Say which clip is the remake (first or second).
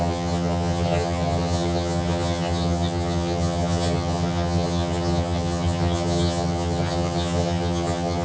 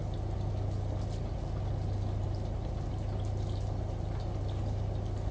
first